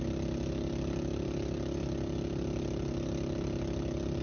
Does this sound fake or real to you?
real